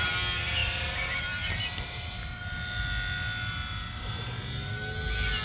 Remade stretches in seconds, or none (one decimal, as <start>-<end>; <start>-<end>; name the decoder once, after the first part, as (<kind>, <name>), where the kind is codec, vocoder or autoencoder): 0.6-2.4 (vocoder, BigVGAN v2)